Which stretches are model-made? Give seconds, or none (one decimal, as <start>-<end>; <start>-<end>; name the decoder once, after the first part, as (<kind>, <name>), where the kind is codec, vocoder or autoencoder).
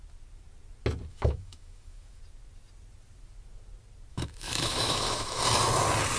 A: 1.1-2.2 (autoencoder, DAC-VAE); 4.1-5.4